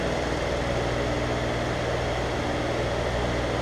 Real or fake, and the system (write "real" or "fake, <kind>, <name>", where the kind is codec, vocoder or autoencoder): real